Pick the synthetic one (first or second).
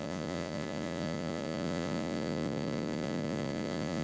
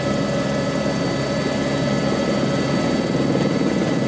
first